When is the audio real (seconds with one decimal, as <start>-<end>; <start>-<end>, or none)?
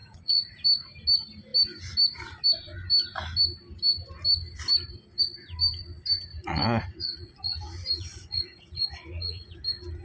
0.5-6.3; 9.6-10.0